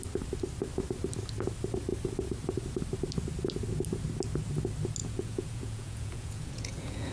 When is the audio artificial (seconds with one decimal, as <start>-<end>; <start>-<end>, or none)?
5.0-7.1